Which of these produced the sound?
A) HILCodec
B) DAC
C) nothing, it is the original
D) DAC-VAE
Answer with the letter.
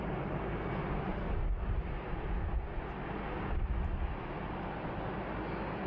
C